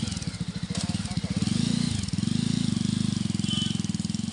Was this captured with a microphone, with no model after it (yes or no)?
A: yes